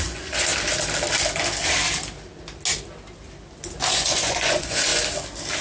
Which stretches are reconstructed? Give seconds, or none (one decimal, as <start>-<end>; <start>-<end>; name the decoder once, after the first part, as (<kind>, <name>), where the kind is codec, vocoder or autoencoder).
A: 0.0-0.5 (vocoder, Vocos); 3.9-4.9